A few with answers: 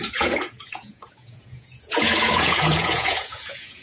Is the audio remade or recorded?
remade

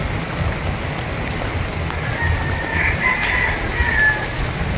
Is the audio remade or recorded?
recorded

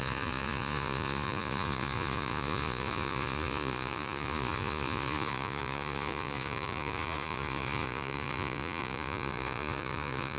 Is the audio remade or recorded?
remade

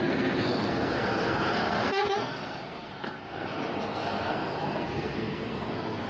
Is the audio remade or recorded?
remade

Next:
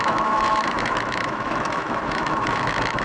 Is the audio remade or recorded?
remade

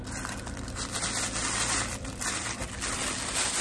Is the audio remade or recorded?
recorded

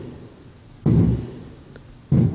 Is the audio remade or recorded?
recorded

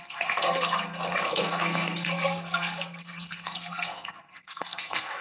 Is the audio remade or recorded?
remade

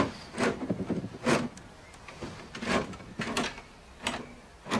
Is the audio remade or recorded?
recorded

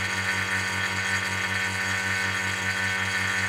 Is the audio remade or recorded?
recorded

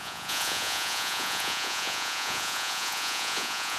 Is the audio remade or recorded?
remade